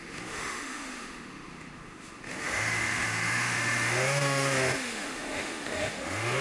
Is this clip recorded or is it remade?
remade